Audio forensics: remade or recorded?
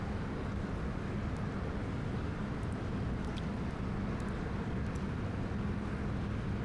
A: recorded